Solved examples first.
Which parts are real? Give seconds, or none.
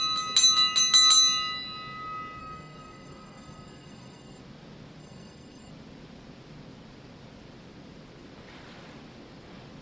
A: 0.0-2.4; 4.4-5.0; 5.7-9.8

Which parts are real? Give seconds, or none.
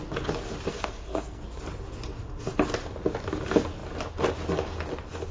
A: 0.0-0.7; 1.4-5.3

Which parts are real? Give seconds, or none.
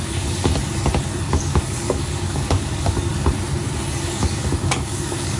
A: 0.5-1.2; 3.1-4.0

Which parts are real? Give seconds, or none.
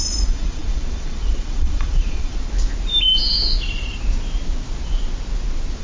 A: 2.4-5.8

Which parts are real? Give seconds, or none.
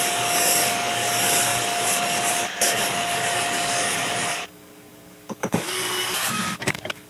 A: none